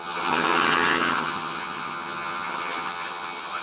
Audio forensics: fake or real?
fake